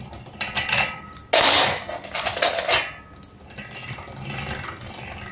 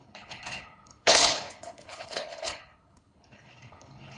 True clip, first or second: first